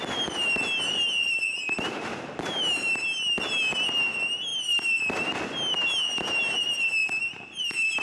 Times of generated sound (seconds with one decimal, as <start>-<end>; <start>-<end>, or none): 4.5-5.0